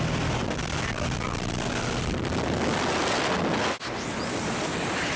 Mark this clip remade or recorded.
recorded